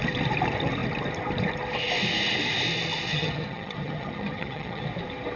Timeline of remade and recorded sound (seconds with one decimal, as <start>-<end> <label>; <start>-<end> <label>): 0.0-3.1 recorded; 3.1-4.8 remade; 4.8-5.4 recorded